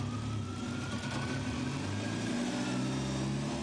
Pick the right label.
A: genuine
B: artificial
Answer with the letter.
A